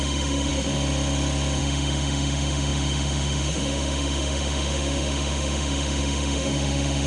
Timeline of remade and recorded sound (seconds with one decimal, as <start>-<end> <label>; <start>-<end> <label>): 0.0-0.5 remade; 0.5-1.6 recorded; 1.6-7.1 remade